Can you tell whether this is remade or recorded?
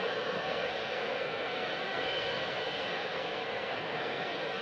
remade